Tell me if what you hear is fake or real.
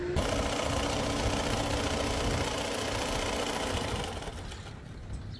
real